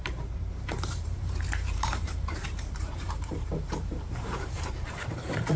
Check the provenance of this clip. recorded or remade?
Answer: remade